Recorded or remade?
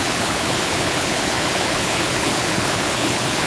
remade